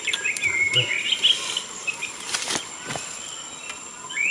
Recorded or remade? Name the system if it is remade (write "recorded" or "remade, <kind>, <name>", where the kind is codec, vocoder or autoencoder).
recorded